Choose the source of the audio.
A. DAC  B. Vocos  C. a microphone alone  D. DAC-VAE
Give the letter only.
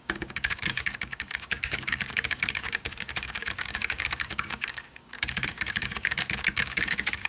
A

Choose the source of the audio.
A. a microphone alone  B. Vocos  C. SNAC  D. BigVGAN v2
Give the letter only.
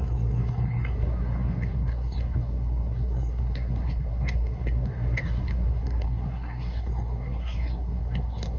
C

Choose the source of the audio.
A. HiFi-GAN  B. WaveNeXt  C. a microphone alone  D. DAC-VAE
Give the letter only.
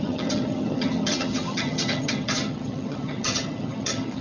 A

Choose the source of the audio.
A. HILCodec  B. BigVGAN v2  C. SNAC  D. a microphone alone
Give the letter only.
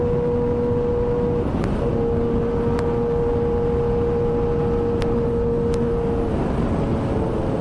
D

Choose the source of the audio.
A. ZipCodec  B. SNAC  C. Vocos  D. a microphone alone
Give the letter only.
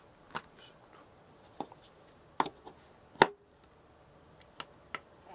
D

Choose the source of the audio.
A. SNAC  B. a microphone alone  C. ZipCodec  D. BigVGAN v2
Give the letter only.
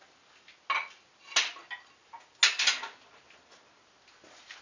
B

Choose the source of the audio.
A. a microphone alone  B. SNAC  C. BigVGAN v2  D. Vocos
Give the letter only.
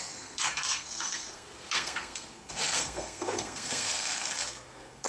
B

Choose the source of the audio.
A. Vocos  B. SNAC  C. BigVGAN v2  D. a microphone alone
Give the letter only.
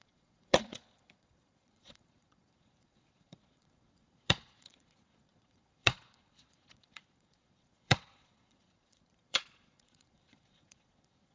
A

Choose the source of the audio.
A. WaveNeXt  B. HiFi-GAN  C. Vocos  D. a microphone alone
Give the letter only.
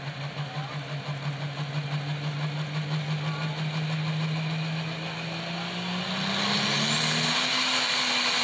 D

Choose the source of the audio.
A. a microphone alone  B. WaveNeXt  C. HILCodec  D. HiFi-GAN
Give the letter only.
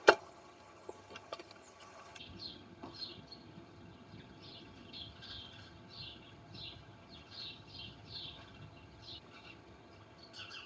D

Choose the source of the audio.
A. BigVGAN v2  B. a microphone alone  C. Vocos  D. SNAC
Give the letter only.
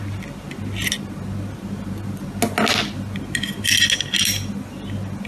B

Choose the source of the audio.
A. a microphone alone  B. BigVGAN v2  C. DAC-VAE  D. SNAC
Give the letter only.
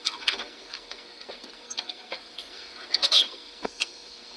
D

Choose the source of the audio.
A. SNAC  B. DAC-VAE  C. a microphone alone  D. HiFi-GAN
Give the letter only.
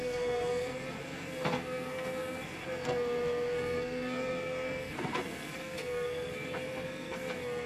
A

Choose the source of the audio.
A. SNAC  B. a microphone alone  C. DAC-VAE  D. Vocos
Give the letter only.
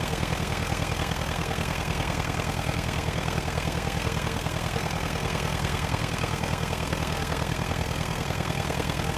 A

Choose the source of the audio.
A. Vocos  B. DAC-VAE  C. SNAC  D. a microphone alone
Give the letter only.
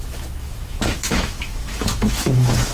B